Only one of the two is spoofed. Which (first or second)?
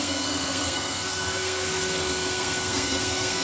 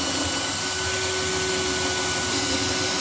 first